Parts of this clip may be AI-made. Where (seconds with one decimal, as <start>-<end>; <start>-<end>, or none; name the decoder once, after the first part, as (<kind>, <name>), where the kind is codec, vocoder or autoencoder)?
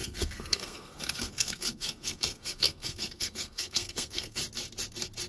0.0-4.4 (codec, SNAC)